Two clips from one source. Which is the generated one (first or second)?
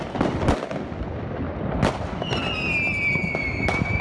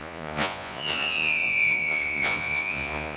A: second